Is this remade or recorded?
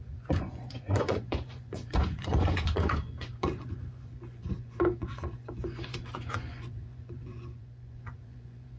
remade